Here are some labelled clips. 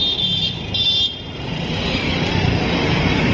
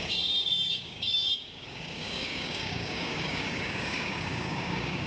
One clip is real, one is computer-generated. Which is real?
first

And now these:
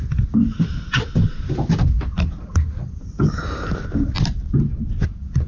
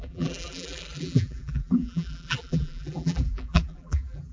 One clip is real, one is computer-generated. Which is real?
first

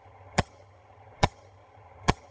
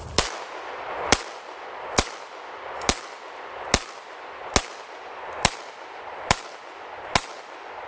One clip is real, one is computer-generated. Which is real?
second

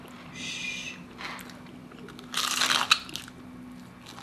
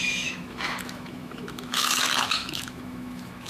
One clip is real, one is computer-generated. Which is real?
first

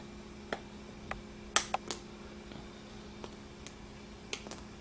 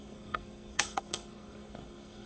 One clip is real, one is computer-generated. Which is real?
first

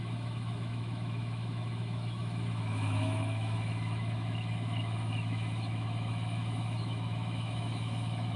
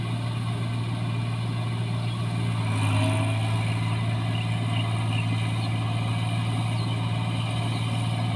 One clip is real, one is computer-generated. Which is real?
second